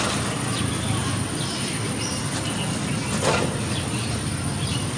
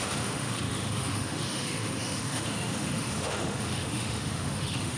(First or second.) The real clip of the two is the first